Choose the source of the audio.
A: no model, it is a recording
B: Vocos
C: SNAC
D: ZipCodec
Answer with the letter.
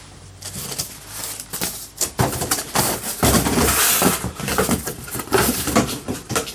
A